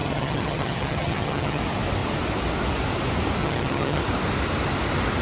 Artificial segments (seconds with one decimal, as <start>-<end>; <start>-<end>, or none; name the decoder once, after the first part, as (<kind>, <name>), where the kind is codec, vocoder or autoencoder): 0.0-1.6 (vocoder, HiFi-GAN); 3.4-4.0